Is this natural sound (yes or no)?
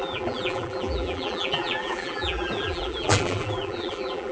no